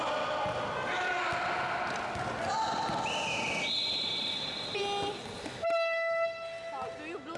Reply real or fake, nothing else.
real